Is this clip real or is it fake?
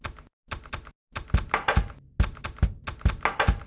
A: real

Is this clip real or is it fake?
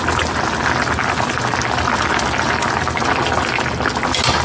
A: real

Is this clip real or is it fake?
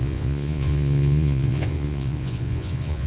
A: fake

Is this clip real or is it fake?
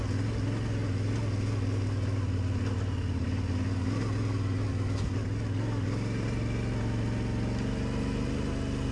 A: real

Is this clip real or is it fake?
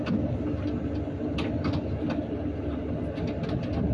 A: real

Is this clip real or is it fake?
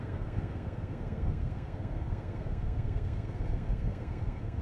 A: fake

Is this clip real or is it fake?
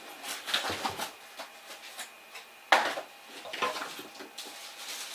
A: real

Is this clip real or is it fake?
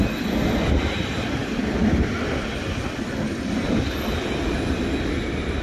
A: real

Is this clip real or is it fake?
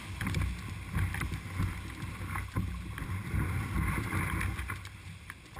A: fake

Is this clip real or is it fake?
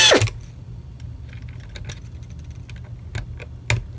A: real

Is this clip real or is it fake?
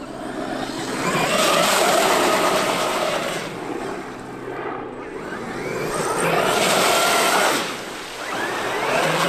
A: real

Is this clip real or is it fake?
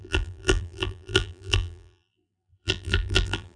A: fake